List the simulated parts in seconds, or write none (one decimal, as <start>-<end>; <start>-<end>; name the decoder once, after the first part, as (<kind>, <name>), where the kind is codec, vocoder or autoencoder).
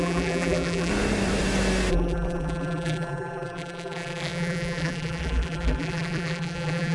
0.0-0.9 (vocoder, BigVGAN v2); 1.9-6.9